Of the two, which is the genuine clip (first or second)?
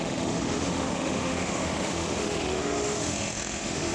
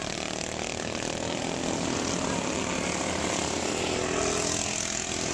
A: second